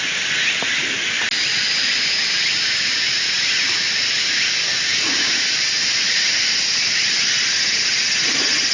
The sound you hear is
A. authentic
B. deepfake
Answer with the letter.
A